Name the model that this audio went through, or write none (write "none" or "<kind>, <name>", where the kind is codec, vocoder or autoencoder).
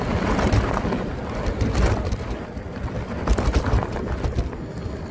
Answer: vocoder, BigVGAN v2